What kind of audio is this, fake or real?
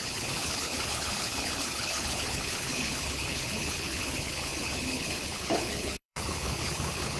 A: fake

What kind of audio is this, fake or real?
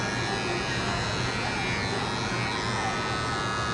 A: real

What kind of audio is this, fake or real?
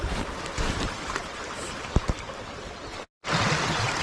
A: real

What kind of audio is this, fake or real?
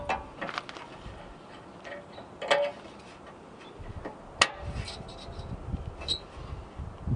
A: real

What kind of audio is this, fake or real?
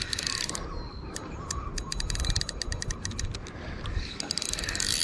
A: real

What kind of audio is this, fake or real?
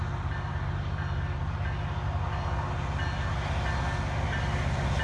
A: real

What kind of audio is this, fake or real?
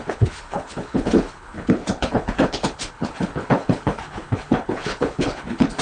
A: fake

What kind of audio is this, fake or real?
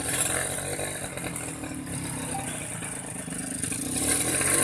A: real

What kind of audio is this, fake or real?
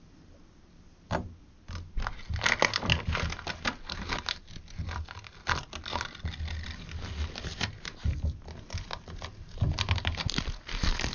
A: real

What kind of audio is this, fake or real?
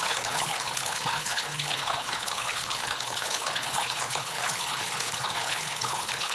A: fake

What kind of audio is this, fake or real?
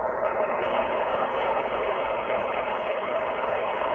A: fake